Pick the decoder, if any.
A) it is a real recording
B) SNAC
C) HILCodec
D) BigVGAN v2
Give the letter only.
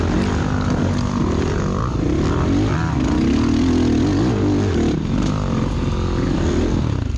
A